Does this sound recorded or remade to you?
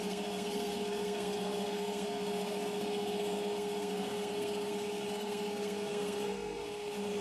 remade